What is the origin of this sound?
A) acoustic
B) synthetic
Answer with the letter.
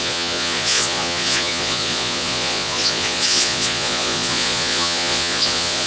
B